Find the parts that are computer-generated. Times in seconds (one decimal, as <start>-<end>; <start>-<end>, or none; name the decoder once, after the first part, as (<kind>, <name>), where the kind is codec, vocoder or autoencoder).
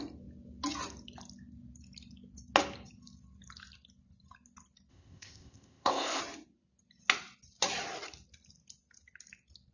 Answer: 4.9-6.2 (codec, ZipCodec)